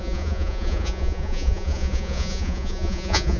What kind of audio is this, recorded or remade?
remade